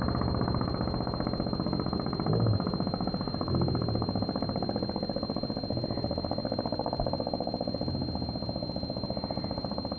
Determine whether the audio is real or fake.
real